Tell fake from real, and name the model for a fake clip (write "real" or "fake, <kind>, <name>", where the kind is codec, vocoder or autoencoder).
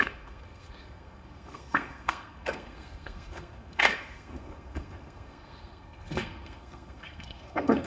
fake, codec, SNAC